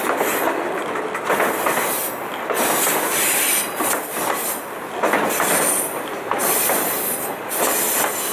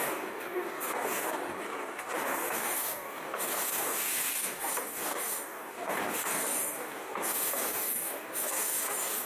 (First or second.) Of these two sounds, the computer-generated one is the second